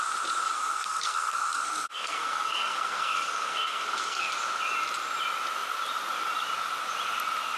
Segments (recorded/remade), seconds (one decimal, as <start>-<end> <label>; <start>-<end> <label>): 0.0-0.4 recorded; 0.4-4.3 remade; 4.3-7.6 recorded